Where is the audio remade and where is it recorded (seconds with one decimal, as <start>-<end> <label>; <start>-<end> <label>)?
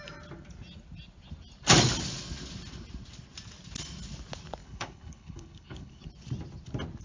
0.0-4.6 recorded; 4.6-6.1 remade; 6.1-7.0 recorded